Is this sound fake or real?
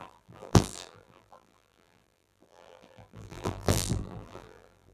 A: fake